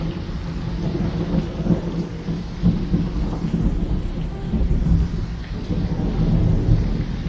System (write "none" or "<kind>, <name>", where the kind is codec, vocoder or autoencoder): none